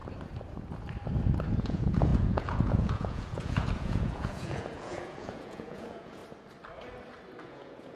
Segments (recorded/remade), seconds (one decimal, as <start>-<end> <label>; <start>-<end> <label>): 0.0-1.5 recorded; 1.5-6.2 remade; 6.2-7.4 recorded; 7.4-8.0 remade